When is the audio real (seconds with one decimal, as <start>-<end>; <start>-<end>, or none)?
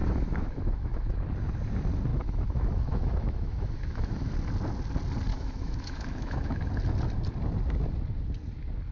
1.2-2.1; 4.3-5.3; 6.7-8.9